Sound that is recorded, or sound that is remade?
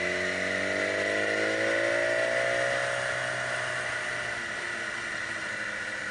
recorded